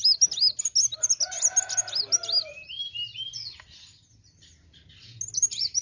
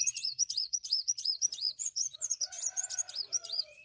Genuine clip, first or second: first